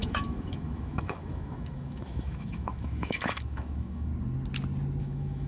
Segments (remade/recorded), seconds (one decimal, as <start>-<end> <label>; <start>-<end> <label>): 0.0-4.1 remade; 4.1-5.0 recorded; 5.0-5.5 remade